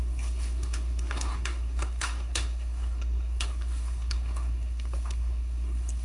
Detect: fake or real fake